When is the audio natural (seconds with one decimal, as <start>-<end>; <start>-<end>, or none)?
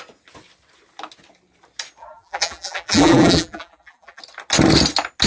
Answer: 0.0-2.0; 4.2-5.3